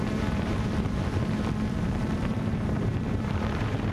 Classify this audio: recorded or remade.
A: remade